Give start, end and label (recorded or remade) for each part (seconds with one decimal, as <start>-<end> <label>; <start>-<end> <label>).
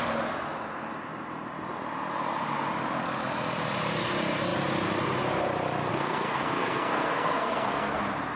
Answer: 0.0-5.9 recorded; 5.9-8.0 remade; 8.0-8.4 recorded